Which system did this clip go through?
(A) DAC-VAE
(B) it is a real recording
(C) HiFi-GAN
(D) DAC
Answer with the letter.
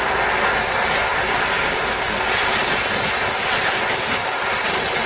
B